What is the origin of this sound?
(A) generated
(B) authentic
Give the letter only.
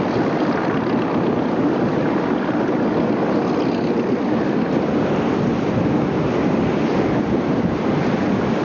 B